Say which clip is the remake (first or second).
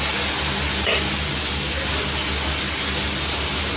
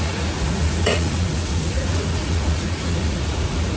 second